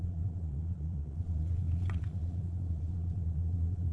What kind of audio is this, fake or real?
fake